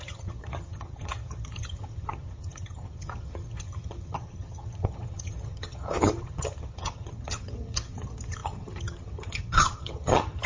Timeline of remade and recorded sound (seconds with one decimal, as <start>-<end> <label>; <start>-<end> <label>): 0.0-10.5 remade